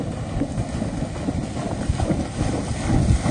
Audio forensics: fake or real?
real